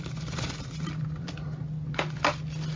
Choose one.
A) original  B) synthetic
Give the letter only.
A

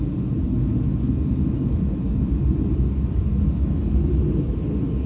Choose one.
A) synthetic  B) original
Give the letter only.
B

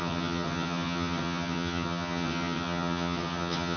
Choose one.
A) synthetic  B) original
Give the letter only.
A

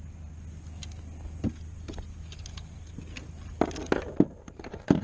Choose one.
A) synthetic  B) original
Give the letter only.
B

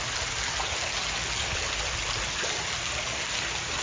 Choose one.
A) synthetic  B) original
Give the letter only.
B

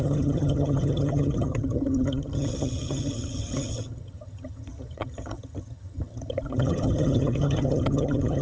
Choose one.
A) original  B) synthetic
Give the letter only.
B